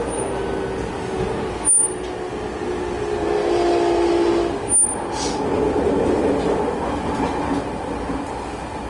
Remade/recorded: recorded